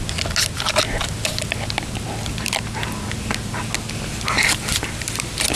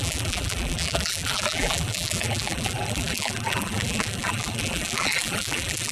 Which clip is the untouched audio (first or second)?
first